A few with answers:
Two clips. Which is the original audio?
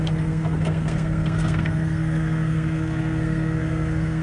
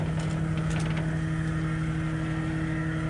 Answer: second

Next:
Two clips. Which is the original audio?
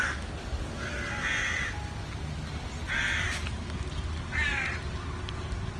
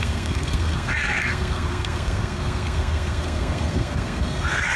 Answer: first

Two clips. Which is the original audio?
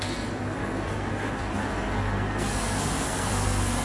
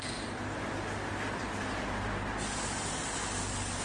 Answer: second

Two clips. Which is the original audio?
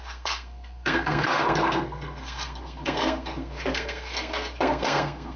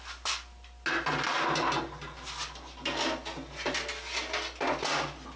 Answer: second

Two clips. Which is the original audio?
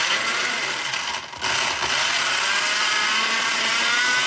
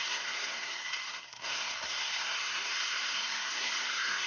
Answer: first